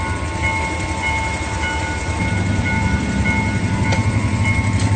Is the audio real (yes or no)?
yes